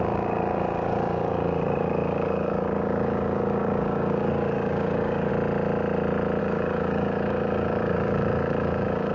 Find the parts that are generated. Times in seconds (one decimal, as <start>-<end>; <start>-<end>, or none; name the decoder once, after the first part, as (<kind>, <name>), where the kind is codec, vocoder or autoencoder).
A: 0.0-5.3 (codec, DAC); 6.4-9.1